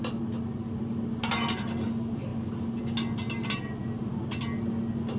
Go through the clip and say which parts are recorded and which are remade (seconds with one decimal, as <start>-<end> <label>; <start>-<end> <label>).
0.0-5.2 recorded